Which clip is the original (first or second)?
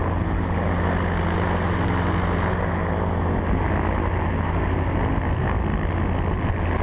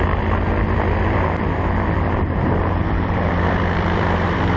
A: first